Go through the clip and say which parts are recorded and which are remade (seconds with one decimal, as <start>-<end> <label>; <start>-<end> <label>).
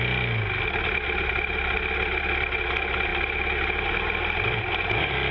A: 0.0-5.3 recorded